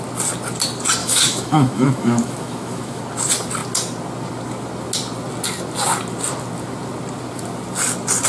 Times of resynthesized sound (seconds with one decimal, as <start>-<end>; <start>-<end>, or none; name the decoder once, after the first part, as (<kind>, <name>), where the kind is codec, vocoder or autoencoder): 1.0-3.0 (autoencoder, DAC-VAE)